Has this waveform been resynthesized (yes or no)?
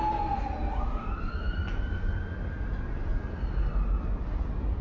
no